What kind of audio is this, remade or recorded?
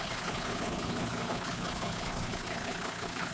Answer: remade